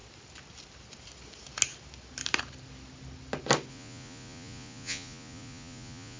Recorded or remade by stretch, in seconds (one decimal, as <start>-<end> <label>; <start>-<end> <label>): 0.0-3.7 recorded; 3.7-6.2 remade